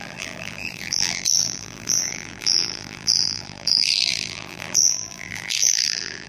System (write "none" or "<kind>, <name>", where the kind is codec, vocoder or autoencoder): vocoder, BigVGAN v2